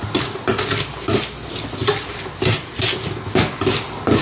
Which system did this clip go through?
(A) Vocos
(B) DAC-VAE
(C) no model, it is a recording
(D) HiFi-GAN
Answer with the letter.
C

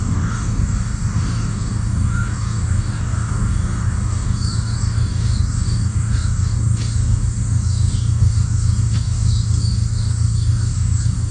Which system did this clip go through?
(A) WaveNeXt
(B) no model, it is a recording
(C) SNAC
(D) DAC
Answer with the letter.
D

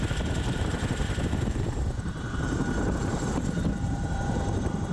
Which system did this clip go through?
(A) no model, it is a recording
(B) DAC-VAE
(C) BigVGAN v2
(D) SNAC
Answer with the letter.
C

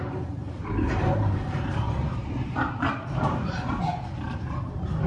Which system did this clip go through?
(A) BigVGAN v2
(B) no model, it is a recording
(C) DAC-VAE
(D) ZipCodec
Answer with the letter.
A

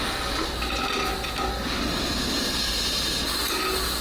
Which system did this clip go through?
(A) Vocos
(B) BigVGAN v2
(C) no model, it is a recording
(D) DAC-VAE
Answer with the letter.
C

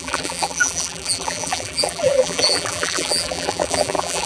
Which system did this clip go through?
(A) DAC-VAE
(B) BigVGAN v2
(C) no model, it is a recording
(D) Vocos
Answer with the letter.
B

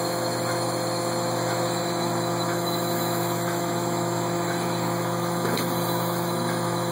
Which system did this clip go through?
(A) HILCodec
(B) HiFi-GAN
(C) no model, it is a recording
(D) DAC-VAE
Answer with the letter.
D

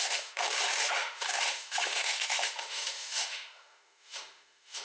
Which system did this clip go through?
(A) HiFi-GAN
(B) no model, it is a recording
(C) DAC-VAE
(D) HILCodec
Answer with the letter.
C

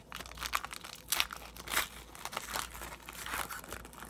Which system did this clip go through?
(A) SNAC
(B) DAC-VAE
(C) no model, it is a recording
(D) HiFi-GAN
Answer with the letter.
C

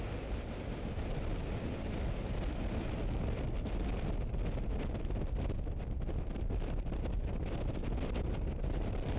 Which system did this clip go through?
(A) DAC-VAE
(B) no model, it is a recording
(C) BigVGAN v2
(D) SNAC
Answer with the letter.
B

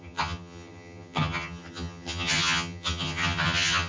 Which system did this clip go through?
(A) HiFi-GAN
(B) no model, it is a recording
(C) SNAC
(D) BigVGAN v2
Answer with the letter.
A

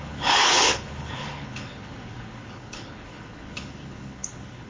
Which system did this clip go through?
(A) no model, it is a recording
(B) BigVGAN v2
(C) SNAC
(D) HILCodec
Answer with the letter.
D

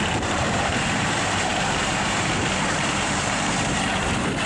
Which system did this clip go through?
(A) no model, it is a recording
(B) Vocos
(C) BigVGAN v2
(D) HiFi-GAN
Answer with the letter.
C